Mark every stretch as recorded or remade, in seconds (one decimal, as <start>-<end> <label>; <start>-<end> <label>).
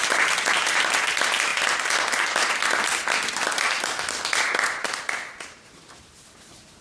0.0-6.8 recorded